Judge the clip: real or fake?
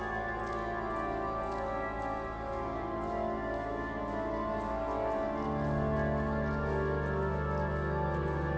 real